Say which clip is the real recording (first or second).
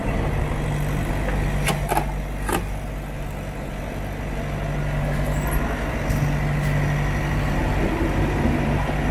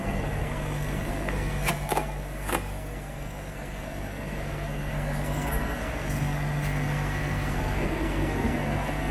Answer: first